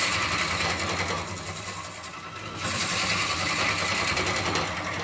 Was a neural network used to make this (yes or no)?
no